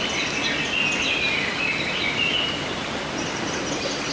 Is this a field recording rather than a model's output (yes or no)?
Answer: yes